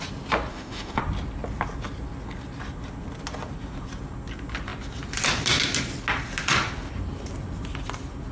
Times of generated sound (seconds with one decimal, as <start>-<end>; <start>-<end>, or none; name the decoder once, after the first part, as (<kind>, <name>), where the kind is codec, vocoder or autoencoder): 0.5-1.0 (autoencoder, DAC-VAE)